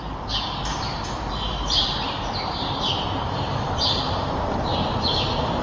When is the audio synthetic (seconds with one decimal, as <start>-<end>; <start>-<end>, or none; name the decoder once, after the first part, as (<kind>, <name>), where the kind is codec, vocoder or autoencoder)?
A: 0.9-4.3 (vocoder, BigVGAN v2); 4.7-5.6